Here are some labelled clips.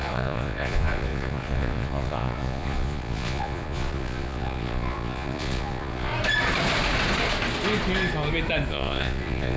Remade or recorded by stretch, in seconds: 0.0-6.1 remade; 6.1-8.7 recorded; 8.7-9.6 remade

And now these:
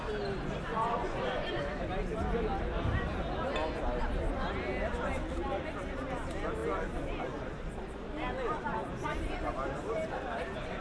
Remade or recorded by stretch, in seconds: 0.0-0.7 recorded; 0.7-1.6 remade; 1.6-10.8 recorded

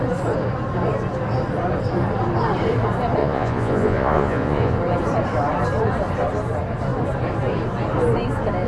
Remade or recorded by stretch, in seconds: 0.0-3.2 recorded; 3.2-4.8 remade; 4.8-8.7 recorded

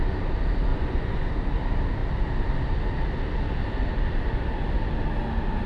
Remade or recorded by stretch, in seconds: 0.0-0.7 recorded; 0.7-1.3 remade; 1.3-5.7 recorded

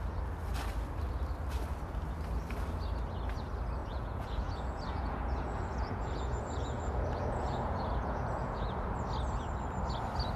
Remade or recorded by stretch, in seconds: 0.0-3.8 recorded; 3.8-8.9 remade; 8.9-10.4 recorded